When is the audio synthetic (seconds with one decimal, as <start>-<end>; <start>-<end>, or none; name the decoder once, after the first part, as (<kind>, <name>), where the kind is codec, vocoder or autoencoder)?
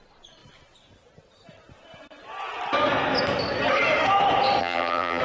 4.6-5.2 (vocoder, BigVGAN v2)